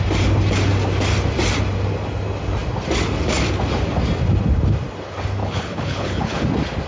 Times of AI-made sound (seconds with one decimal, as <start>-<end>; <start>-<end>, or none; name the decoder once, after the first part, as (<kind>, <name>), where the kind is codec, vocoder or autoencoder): 5.4-6.4 (codec, HILCodec)